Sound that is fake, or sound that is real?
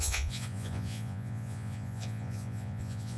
fake